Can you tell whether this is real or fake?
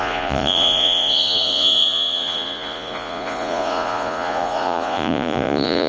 fake